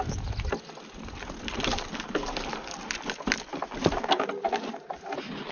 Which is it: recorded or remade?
recorded